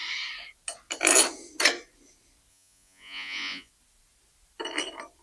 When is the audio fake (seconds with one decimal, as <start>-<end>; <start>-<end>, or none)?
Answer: 2.5-3.7